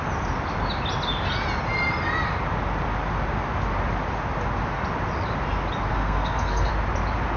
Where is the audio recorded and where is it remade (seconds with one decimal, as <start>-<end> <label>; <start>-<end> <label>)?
0.0-5.9 recorded; 5.9-6.7 remade; 6.7-7.4 recorded